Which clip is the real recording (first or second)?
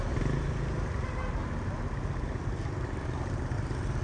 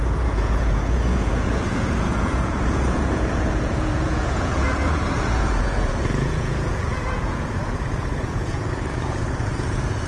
first